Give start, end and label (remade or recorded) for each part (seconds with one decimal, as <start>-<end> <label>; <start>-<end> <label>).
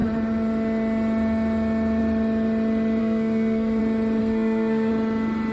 0.0-3.0 recorded; 3.0-3.8 remade; 3.8-4.2 recorded; 4.2-4.9 remade; 4.9-5.5 recorded